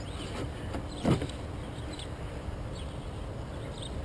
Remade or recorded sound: recorded